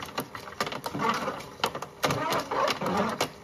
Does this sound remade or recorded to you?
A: recorded